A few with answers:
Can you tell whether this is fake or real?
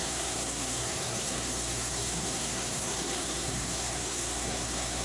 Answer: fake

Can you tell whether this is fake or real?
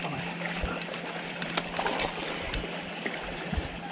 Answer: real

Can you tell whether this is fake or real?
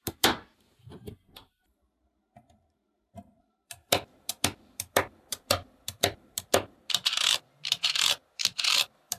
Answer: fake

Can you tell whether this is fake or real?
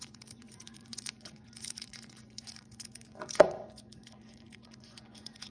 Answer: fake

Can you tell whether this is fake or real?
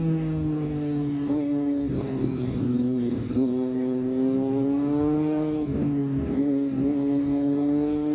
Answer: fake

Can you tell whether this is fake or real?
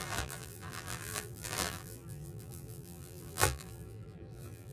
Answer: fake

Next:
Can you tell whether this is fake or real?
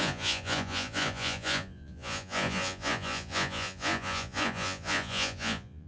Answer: fake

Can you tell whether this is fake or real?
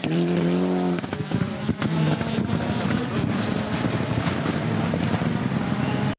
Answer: fake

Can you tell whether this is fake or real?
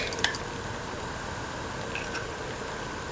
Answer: real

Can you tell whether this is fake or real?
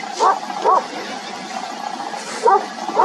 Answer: real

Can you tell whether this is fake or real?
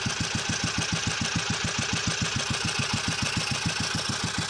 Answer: real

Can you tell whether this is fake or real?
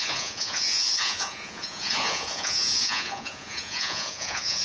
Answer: fake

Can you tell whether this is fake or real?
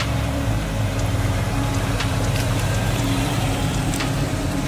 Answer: fake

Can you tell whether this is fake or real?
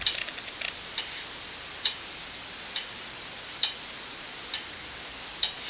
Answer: fake